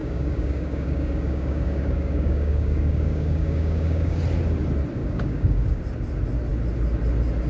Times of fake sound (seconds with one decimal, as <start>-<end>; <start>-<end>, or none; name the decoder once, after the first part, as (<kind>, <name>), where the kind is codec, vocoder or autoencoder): 0.0-4.2 (codec, DAC); 5.0-5.8

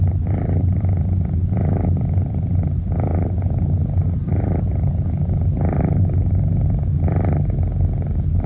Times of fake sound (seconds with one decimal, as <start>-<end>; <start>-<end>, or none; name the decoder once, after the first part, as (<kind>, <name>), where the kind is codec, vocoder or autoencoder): none

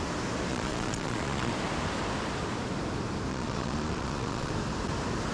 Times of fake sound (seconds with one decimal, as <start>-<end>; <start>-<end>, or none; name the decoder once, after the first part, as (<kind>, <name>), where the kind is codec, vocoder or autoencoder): 0.5-1.5 (vocoder, Vocos); 3.3-4.5

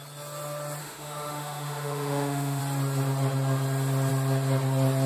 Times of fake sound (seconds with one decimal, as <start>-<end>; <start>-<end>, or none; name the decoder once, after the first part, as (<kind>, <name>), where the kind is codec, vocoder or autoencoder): 0.8-2.6 (autoencoder, DAC-VAE)

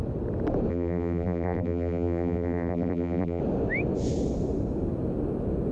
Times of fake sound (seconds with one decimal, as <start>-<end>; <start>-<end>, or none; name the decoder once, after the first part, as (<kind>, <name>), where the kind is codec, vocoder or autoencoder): 0.7-3.4 (vocoder, BigVGAN v2)